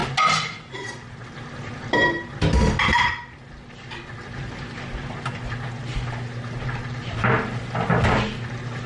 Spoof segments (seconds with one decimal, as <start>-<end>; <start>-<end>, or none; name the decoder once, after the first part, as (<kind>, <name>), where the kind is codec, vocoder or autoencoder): none